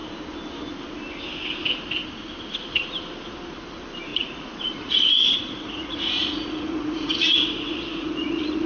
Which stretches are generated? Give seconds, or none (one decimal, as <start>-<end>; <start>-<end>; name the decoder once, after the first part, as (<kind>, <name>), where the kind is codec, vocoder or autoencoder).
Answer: 4.1-8.7 (vocoder, Vocos)